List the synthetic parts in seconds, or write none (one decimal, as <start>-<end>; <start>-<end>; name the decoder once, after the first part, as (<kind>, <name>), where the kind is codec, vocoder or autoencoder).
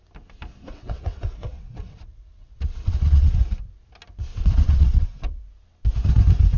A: 0.7-3.3 (vocoder, WaveNeXt); 4.3-5.4